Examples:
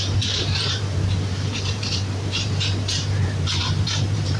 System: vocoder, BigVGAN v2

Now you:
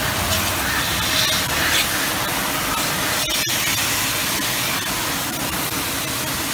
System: none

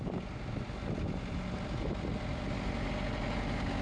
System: none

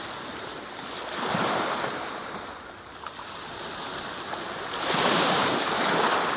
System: none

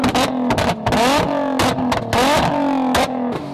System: none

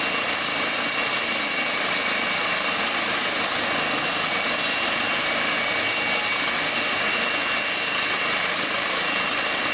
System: none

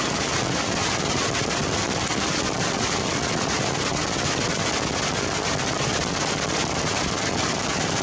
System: none